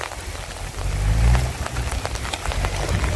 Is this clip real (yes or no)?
yes